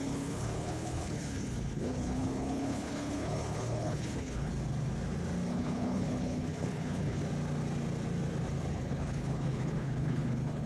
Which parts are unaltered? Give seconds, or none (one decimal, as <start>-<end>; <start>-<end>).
4.5-5.5; 7.2-8.7